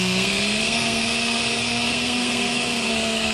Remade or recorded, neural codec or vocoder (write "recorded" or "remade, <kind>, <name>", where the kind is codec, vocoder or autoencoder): remade, codec, SNAC